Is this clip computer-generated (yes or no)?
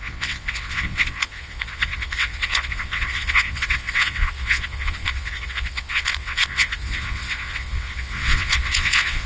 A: yes